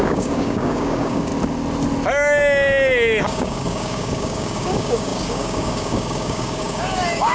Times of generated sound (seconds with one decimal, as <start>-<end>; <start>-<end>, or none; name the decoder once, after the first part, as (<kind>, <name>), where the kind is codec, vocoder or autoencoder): 0.0-1.3 (codec, DAC); 3.2-7.3